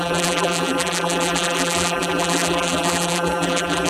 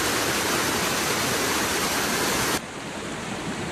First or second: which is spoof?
first